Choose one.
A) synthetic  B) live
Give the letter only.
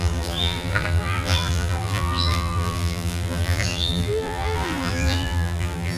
A